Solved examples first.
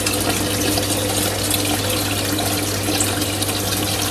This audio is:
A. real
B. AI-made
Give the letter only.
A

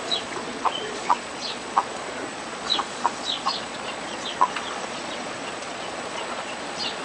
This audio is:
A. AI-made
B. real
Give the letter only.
A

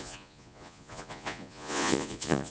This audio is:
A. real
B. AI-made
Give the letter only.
B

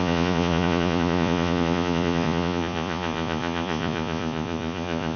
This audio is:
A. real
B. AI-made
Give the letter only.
B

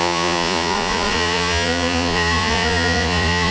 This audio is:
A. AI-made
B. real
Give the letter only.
A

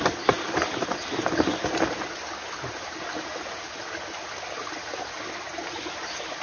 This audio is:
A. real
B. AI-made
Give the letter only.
A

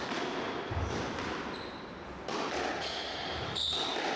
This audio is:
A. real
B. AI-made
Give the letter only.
A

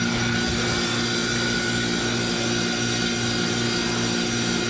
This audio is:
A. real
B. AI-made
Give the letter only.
A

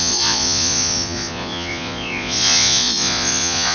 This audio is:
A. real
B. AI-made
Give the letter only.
B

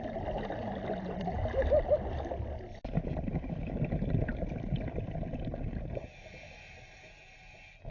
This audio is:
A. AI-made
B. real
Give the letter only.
B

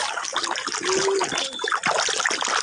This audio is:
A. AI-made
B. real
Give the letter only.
B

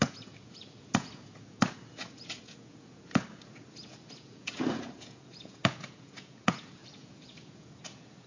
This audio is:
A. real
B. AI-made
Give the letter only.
B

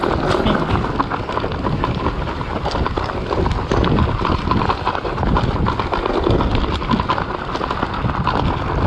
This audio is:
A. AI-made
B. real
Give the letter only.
B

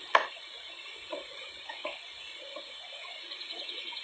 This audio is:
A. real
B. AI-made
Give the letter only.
B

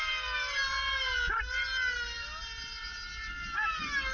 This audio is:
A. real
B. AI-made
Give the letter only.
A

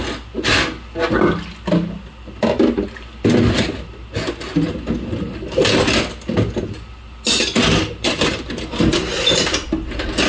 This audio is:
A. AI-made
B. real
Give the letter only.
B